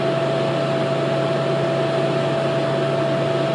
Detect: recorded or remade recorded